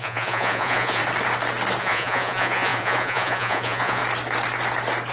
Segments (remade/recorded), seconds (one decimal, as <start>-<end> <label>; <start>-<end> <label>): 0.0-1.0 remade; 1.0-1.8 recorded; 1.8-4.0 remade; 4.0-5.1 recorded